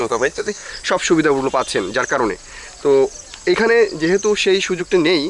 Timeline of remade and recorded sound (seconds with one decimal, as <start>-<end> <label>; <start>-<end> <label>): 0.0-0.7 remade; 0.7-5.3 recorded